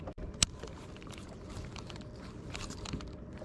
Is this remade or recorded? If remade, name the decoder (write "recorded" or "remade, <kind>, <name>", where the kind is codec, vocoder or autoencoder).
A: recorded